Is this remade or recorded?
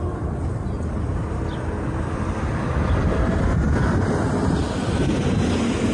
recorded